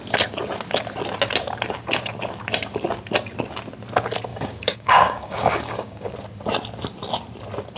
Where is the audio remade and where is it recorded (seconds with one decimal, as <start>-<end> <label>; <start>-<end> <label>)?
0.0-4.3 recorded; 4.3-6.1 remade; 6.1-7.8 recorded